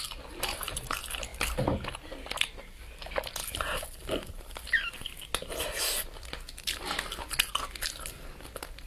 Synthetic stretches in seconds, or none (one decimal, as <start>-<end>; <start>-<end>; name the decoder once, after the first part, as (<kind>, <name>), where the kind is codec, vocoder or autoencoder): none